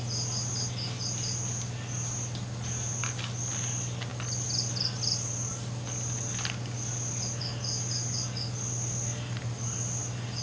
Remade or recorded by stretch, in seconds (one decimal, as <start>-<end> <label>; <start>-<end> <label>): 0.0-10.4 recorded

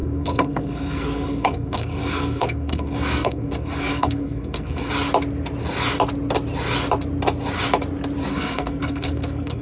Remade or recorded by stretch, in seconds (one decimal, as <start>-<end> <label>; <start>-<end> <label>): 0.0-4.9 remade; 4.9-8.3 recorded; 8.3-9.6 remade

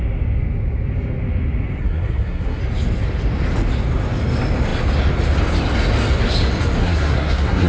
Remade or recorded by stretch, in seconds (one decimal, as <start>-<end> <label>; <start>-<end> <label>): 0.0-1.8 recorded; 1.8-2.6 remade; 2.6-6.8 recorded; 6.8-7.7 remade

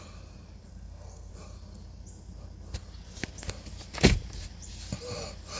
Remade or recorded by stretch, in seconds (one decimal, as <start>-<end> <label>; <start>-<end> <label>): 0.0-0.7 recorded; 0.7-1.3 remade; 1.3-5.6 recorded

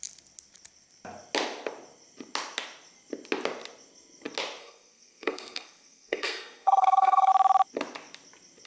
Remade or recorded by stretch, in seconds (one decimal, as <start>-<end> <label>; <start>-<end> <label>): 0.0-4.6 recorded; 4.6-7.3 remade; 7.3-8.7 recorded

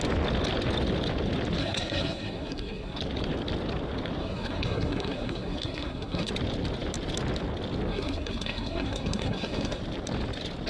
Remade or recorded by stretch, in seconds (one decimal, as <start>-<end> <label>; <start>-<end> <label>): 0.0-1.6 recorded; 1.6-3.0 remade; 3.0-4.2 recorded; 4.2-6.3 remade; 6.3-7.9 recorded; 7.9-9.8 remade; 9.8-10.7 recorded